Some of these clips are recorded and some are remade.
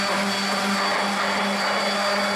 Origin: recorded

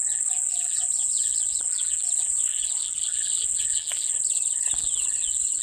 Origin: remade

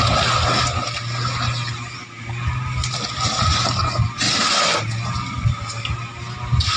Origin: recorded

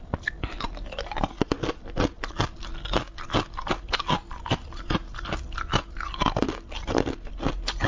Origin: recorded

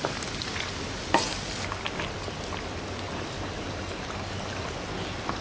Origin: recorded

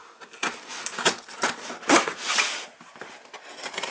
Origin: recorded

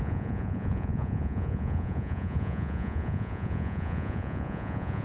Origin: remade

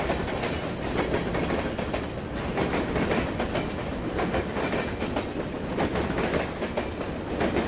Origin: recorded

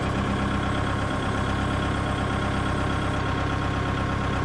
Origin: recorded